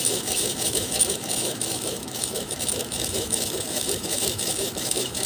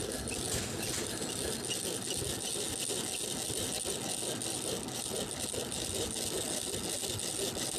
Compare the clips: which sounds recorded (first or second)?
second